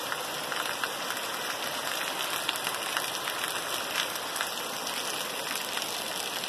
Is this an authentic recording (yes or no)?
yes